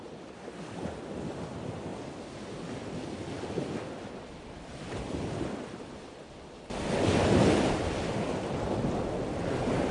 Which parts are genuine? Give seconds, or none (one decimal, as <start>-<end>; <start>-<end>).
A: 0.0-9.9